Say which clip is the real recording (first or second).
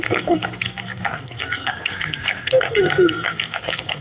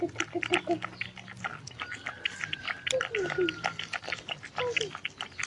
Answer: second